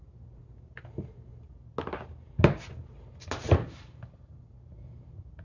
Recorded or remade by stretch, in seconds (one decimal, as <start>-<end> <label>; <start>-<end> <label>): 0.0-5.4 recorded